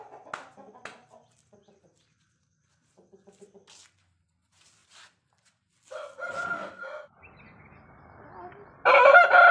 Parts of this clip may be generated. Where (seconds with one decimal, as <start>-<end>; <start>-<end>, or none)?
none